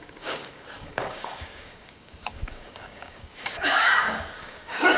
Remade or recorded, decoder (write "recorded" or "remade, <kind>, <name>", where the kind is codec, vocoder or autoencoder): remade, codec, DAC